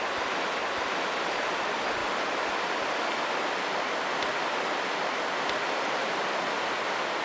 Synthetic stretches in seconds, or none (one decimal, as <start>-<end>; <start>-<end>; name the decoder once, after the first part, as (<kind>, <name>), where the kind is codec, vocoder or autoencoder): none